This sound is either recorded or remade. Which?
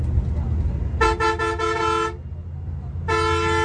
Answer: recorded